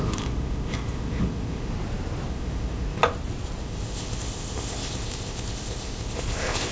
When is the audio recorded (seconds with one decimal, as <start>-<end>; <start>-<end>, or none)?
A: 1.7-2.3; 3.0-3.6